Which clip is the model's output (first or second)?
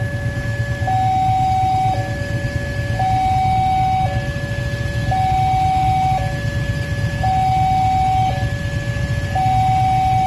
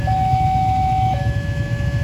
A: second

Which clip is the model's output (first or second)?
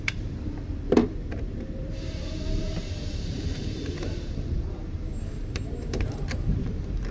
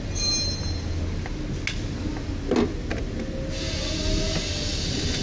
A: first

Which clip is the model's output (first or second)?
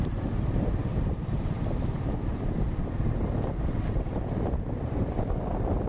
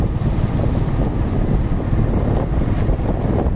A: first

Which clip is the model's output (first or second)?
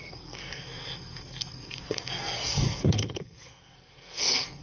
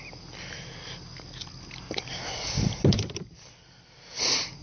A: first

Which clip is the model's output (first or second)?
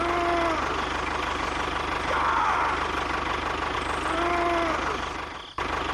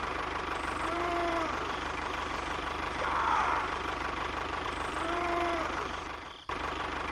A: second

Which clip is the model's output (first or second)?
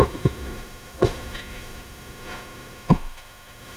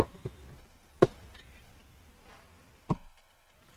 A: first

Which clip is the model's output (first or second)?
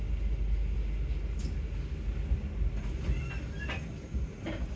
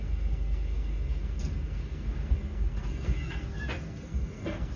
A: second